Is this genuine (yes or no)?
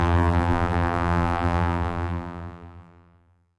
no